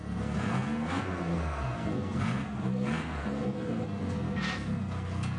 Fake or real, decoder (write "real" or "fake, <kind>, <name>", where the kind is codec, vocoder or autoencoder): fake, codec, SNAC